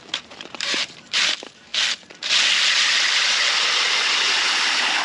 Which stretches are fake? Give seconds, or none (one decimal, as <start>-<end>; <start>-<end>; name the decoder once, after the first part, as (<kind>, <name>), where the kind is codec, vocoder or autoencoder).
0.0-1.7 (vocoder, BigVGAN v2)

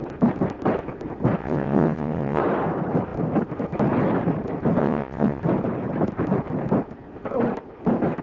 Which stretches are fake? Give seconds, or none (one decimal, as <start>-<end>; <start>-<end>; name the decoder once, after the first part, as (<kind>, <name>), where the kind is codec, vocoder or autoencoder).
1.4-2.4 (vocoder, WaveNeXt); 4.8-5.4

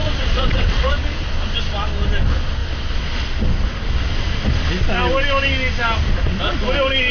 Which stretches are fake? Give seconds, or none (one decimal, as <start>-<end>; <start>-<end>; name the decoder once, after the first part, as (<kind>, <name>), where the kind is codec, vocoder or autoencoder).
0.0-0.9 (vocoder, WaveNeXt)

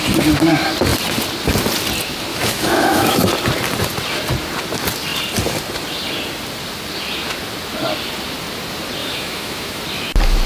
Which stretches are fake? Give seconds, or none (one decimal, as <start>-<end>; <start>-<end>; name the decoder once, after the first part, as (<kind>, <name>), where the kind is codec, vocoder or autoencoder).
2.3-3.3 (autoencoder, DAC-VAE); 9.0-9.8

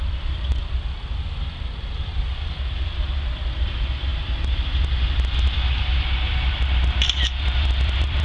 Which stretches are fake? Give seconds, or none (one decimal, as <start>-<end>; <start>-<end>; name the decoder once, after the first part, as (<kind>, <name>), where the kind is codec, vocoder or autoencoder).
0.0-0.6 (vocoder, BigVGAN v2); 1.5-8.2

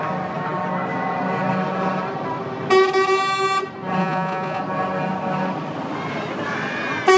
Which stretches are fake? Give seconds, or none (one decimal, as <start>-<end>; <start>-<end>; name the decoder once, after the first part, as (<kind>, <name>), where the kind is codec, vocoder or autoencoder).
4.0-4.6 (vocoder, Vocos)